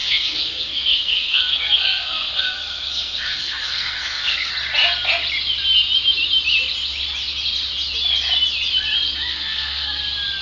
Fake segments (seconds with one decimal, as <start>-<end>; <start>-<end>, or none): 0.0-4.5; 9.3-10.0